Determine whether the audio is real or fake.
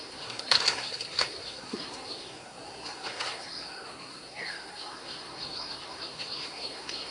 fake